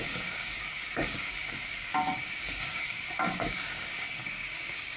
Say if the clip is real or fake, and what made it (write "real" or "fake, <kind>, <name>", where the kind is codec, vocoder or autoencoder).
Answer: fake, codec, DAC